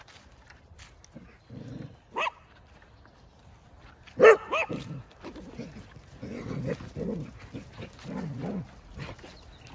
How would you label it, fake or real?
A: real